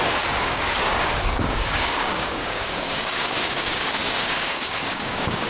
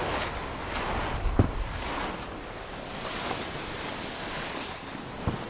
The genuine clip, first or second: second